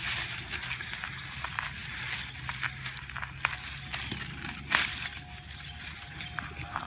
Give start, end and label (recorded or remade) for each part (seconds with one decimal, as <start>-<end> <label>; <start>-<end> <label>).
0.0-6.9 recorded